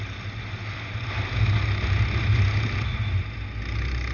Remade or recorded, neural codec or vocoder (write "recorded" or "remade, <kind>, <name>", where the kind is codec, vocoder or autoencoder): recorded